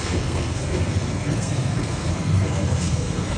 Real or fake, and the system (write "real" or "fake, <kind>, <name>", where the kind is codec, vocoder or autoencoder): fake, codec, SNAC